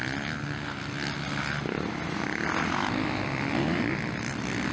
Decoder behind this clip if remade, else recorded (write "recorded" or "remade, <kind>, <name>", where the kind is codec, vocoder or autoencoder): recorded